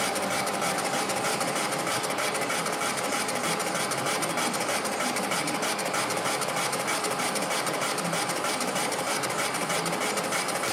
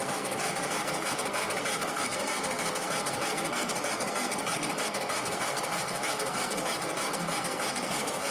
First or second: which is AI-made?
second